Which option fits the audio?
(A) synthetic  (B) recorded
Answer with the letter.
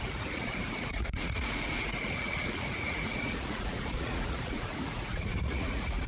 A